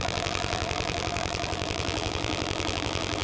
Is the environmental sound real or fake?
fake